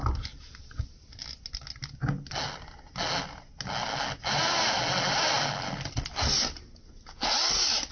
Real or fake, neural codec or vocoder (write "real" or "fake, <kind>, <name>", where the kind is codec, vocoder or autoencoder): real